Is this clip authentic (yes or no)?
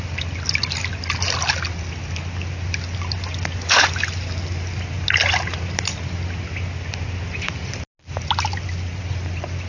yes